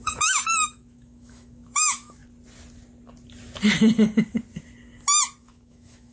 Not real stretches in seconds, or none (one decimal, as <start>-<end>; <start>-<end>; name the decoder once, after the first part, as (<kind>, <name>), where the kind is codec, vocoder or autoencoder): 0.0-2.2 (autoencoder, DAC-VAE); 5.4-6.1